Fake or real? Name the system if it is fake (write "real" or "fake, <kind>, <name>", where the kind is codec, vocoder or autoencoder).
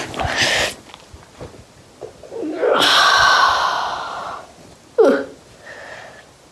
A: real